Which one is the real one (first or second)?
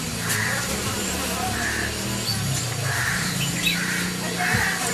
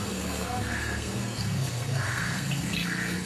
first